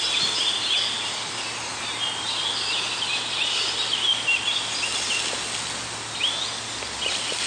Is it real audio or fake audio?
real